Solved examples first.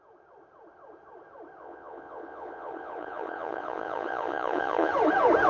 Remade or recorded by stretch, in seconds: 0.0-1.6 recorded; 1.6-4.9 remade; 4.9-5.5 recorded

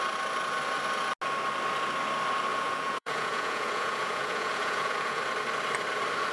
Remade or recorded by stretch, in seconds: 0.0-2.5 recorded; 2.5-5.2 remade; 5.2-6.3 recorded

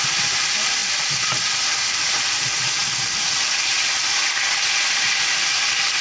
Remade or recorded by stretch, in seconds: 0.0-6.0 recorded

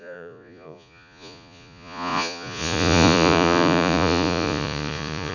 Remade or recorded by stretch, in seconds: 0.0-5.3 remade

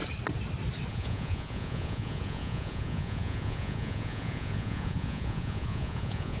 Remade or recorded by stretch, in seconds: 0.0-0.9 recorded; 0.9-6.4 remade